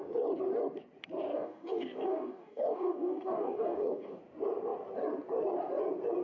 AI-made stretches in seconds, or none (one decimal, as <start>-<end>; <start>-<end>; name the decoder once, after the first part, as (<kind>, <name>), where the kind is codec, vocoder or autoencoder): 1.3-4.2 (codec, DAC)